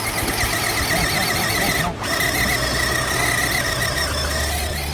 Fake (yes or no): no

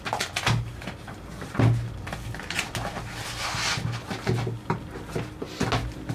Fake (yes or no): no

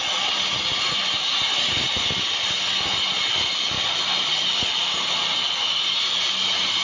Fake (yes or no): no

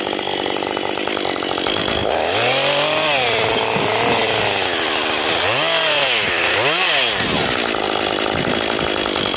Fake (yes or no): no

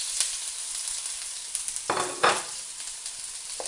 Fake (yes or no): yes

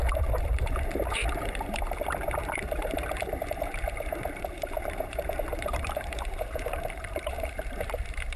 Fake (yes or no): yes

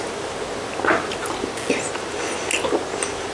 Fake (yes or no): no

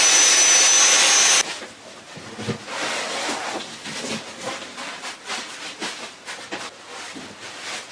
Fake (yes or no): no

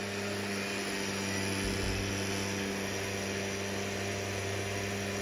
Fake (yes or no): no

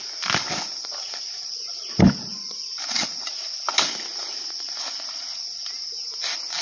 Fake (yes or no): no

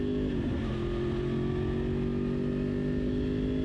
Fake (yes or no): no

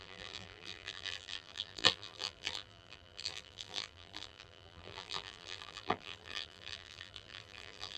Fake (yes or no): yes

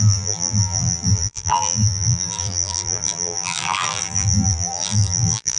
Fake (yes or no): yes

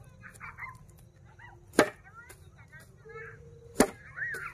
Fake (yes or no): no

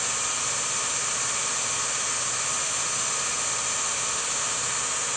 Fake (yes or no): no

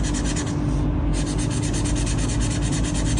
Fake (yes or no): no